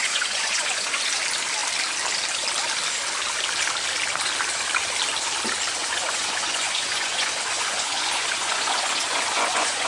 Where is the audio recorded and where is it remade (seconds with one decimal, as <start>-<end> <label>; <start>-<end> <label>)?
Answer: 0.0-1.2 remade; 1.2-5.8 recorded; 5.8-9.9 remade